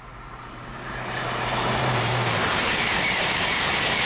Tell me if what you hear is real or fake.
fake